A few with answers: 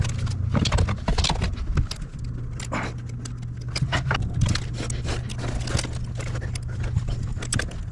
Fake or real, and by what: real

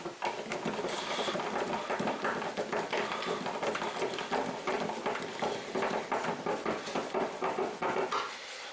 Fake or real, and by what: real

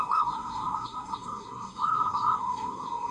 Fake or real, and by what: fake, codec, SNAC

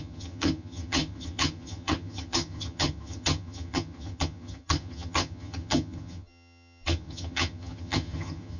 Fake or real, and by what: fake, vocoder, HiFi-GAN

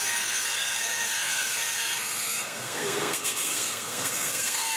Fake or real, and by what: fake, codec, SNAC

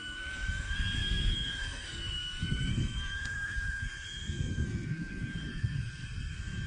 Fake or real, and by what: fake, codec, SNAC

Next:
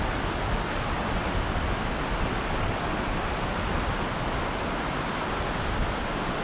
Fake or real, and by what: real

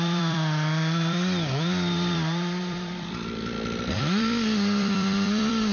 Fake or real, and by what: fake, vocoder, BigVGAN v2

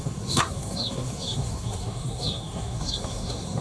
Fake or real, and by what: fake, codec, SNAC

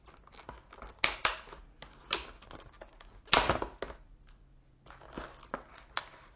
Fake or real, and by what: real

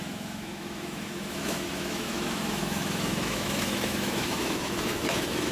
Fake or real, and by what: fake, autoencoder, DAC-VAE